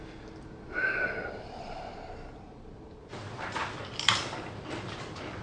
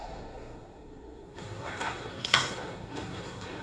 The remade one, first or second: second